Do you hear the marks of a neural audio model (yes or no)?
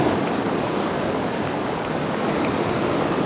yes